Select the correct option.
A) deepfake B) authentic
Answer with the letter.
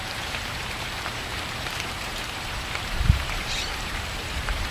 A